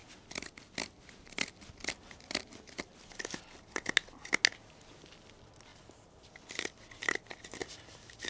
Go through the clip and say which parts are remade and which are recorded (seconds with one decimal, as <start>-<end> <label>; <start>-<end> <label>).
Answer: 0.0-5.7 recorded; 5.7-6.3 remade; 6.3-7.6 recorded; 7.6-8.3 remade